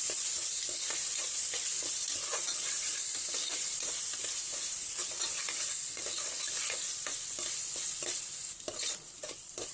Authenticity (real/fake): fake